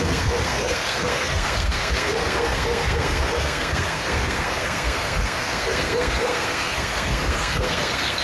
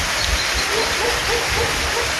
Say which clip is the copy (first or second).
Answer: first